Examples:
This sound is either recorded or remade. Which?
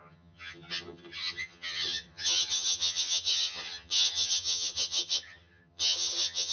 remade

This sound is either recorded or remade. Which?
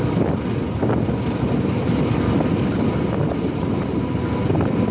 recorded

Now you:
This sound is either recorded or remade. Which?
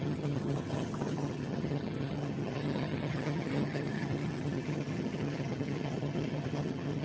remade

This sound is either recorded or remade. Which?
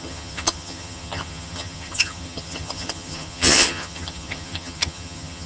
remade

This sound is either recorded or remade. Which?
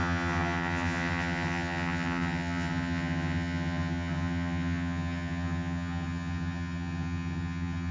remade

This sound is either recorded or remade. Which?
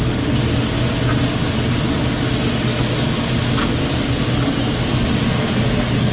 recorded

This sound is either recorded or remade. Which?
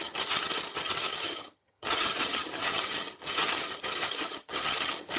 remade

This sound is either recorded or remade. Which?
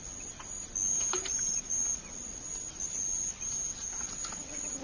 recorded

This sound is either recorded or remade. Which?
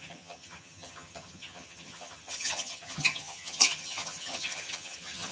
remade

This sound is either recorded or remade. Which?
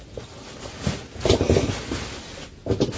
recorded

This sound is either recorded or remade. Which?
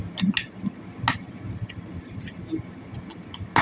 recorded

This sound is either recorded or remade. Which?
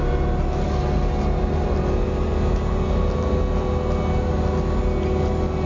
recorded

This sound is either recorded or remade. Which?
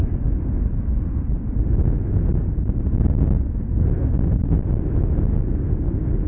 recorded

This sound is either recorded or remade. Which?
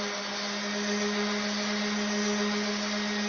recorded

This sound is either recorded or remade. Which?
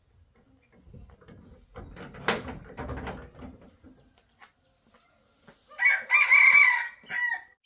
recorded